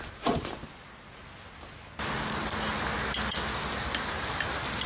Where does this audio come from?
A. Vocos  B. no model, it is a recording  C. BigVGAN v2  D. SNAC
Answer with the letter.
B